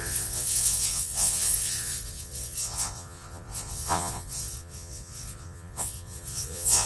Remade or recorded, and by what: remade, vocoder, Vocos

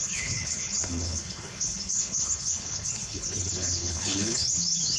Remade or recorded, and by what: remade, codec, HILCodec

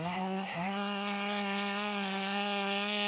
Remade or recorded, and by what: remade, codec, SNAC